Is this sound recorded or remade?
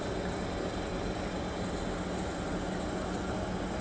recorded